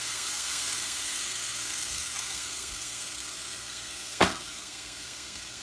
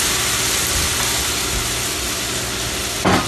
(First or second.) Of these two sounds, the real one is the second